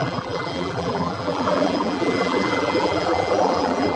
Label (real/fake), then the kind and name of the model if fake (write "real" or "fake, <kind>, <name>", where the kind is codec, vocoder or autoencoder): fake, vocoder, BigVGAN v2